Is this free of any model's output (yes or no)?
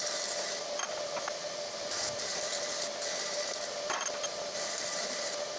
yes